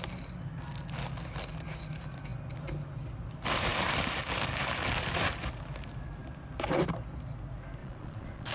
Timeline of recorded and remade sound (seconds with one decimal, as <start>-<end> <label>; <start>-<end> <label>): 0.0-7.8 recorded; 7.8-8.5 remade